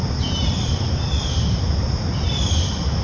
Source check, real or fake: fake